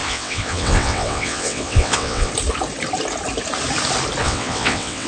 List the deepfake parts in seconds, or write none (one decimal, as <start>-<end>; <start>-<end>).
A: 0.0-2.3; 4.2-5.1